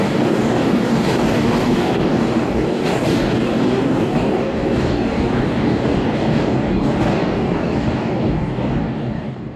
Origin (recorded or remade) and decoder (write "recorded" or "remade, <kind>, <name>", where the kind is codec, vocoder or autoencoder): remade, codec, DAC